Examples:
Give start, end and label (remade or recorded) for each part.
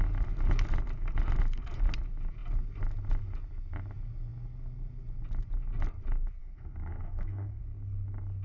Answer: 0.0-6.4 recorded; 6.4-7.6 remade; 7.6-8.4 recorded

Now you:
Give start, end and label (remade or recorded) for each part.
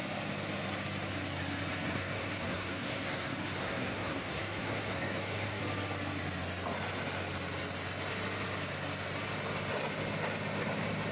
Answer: 0.0-1.7 recorded; 1.7-5.6 remade; 5.6-11.1 recorded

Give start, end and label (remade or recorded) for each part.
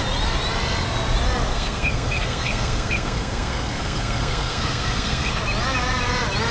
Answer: 0.0-1.5 recorded; 1.5-5.4 remade; 5.4-6.5 recorded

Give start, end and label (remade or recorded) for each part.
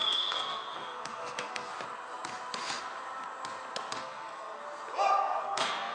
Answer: 0.0-1.7 remade; 1.7-4.0 recorded; 4.0-4.6 remade; 4.6-5.2 recorded; 5.2-5.9 remade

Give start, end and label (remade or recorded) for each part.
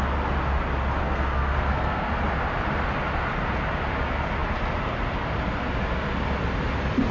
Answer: 0.0-1.0 recorded; 1.0-2.1 remade; 2.1-7.1 recorded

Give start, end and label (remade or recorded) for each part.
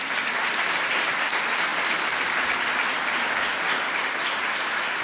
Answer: 0.0-5.0 recorded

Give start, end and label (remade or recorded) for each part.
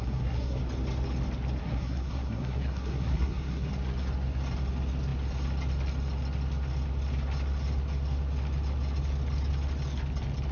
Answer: 0.0-0.6 remade; 0.6-1.6 recorded; 1.6-3.7 remade; 3.7-10.5 recorded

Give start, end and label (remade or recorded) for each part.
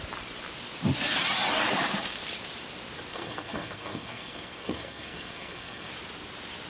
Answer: 0.0-3.1 recorded; 3.1-5.9 remade; 5.9-6.7 recorded